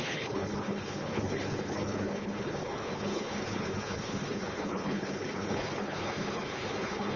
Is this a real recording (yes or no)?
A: no